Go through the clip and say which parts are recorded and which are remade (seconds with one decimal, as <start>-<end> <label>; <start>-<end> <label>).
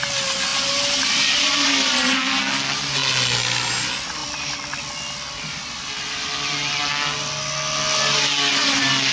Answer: 0.0-0.5 recorded; 0.5-2.4 remade; 2.4-4.2 recorded; 4.2-4.9 remade; 4.9-9.1 recorded